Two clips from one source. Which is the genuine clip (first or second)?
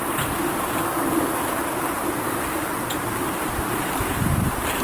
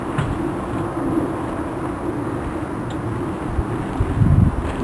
second